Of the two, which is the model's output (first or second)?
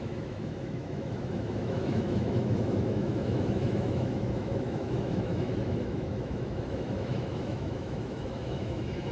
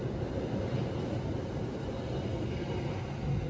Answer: first